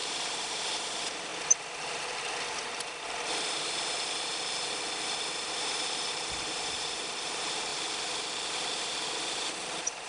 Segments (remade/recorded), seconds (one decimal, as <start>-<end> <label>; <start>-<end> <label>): 0.0-1.3 remade; 1.3-5.6 recorded; 5.6-7.7 remade; 7.7-9.1 recorded; 9.1-10.1 remade